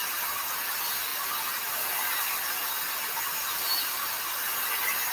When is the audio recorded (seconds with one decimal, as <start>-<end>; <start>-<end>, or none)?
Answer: 0.0-5.1